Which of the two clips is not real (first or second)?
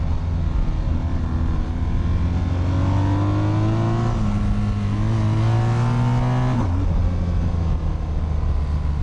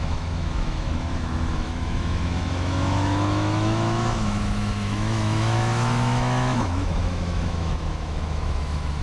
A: second